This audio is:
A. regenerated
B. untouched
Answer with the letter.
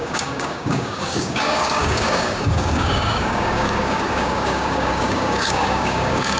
A